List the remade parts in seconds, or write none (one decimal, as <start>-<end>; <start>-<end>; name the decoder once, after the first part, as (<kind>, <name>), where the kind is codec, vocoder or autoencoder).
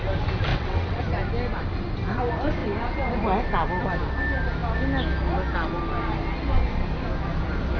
0.5-1.0 (vocoder, WaveNeXt)